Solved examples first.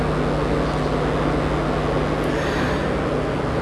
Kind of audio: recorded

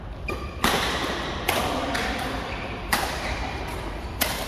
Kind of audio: remade